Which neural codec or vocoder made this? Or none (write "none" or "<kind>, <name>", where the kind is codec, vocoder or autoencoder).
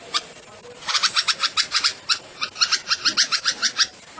none